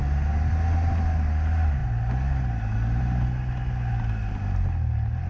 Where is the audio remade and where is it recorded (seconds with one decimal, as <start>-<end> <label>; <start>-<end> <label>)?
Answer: 0.0-5.3 recorded